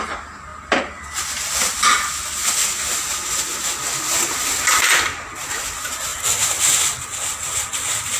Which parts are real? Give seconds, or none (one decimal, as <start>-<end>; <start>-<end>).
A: 0.0-8.2